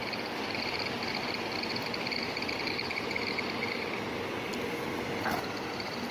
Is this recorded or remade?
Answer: recorded